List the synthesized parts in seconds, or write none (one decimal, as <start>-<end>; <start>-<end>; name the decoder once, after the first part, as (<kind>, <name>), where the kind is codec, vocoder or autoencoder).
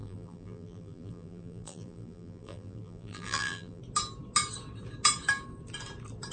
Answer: 0.0-3.8 (vocoder, BigVGAN v2)